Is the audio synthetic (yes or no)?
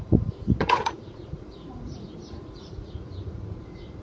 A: yes